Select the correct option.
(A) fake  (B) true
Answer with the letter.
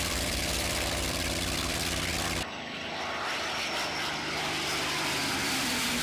A